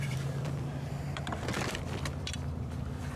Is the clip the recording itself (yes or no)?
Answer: no